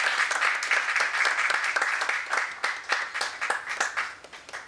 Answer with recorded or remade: recorded